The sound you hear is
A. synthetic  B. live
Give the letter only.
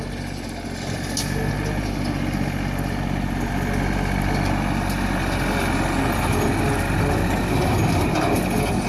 B